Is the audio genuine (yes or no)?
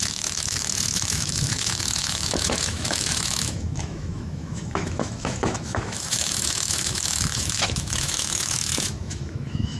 no